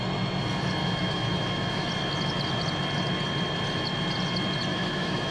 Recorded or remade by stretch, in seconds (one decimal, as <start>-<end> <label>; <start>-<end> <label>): 0.0-0.8 recorded; 0.8-1.9 remade; 1.9-4.7 recorded; 4.7-5.3 remade